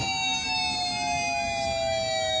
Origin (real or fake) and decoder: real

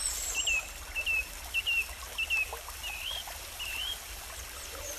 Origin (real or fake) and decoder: real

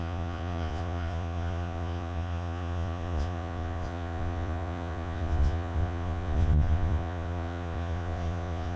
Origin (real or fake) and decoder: fake, vocoder, Vocos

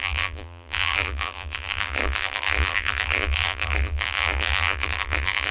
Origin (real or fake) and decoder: fake, vocoder, BigVGAN v2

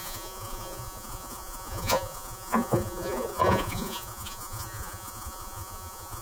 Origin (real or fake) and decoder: fake, vocoder, Vocos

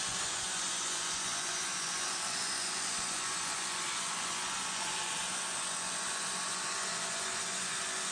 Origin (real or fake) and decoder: fake, vocoder, Vocos